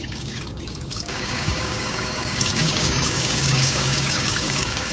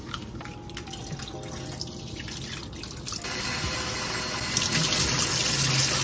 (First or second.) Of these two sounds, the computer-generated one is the first